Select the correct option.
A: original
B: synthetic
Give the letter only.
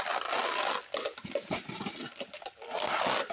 A